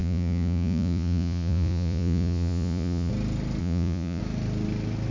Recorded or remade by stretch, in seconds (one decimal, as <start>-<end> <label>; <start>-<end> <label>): 0.0-3.1 remade; 3.1-3.6 recorded; 3.6-4.2 remade; 4.2-5.1 recorded